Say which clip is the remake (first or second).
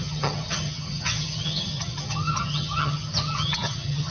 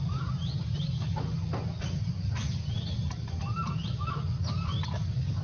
first